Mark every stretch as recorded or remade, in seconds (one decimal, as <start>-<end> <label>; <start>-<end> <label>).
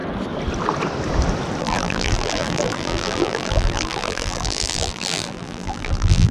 0.0-1.6 recorded; 1.6-6.3 remade